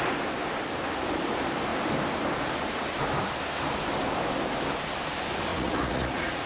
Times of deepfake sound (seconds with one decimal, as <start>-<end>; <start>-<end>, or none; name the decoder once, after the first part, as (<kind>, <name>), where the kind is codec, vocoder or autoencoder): 5.5-6.5 (vocoder, Vocos)